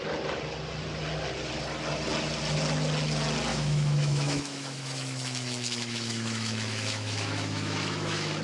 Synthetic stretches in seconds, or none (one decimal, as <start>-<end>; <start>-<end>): 3.5-8.4